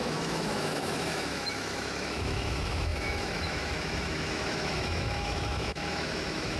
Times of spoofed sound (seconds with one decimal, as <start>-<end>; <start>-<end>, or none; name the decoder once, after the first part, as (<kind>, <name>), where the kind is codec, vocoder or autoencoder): 0.0-6.6 (autoencoder, DAC-VAE)